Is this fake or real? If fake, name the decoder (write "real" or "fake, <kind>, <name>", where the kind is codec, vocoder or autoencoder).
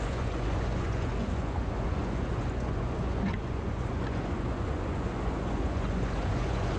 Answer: fake, vocoder, Vocos